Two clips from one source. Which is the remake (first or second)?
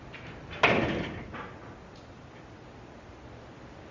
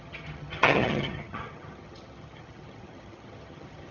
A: second